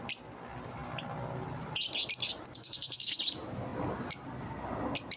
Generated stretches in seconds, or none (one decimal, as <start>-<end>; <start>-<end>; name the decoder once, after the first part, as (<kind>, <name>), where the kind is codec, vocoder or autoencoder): 2.6-3.2 (codec, SNAC)